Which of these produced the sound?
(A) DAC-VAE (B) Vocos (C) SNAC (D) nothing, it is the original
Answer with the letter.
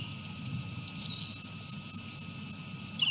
D